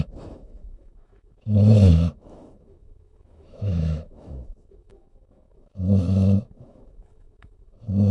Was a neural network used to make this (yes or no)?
yes